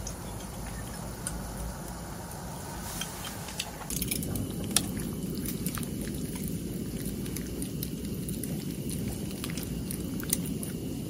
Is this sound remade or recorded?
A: recorded